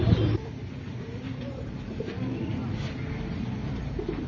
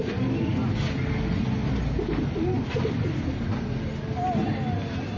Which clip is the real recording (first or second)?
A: second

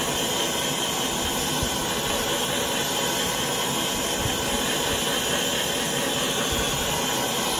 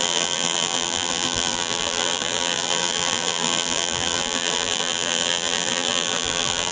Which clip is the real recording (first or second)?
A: first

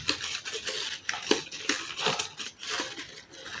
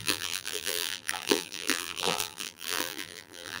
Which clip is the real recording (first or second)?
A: first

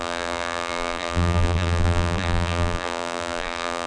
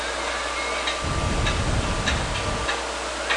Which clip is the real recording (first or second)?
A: second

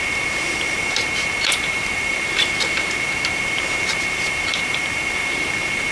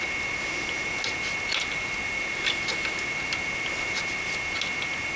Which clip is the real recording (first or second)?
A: second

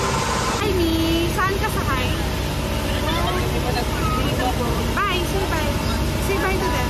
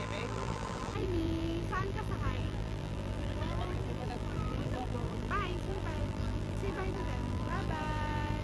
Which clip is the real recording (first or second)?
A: first